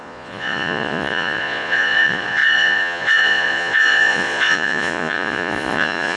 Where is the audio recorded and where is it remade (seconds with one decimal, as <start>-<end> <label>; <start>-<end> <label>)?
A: 0.0-6.2 remade